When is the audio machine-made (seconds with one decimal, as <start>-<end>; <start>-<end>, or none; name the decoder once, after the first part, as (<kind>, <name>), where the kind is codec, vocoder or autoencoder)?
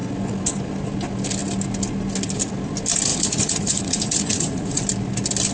3.1-4.8 (vocoder, Vocos)